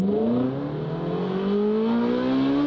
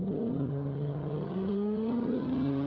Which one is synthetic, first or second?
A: second